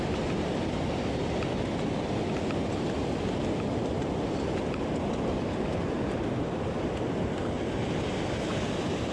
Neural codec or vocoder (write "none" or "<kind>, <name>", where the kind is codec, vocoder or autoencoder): none